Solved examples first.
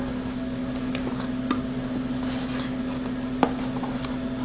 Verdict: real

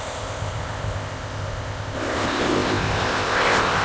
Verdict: fake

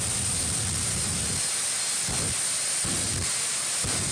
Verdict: real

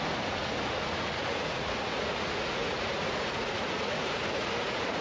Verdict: fake